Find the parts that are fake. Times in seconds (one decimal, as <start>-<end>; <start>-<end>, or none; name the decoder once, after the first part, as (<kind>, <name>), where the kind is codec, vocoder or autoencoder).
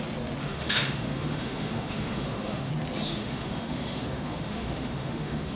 0.4-2.7 (autoencoder, DAC-VAE); 3.1-5.6